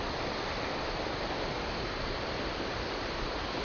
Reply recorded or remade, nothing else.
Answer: recorded